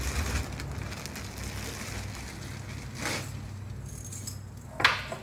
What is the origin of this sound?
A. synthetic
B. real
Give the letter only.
B